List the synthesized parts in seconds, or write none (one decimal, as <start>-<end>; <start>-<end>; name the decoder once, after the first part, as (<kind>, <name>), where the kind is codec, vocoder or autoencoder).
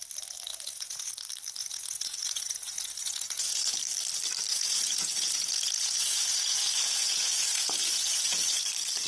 0.5-1.1 (vocoder, Vocos); 1.6-3.7; 4.5-8.6